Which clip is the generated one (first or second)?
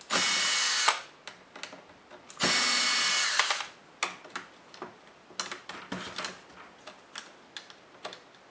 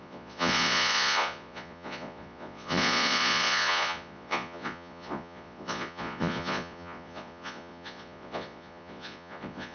second